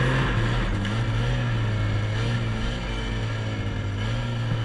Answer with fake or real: real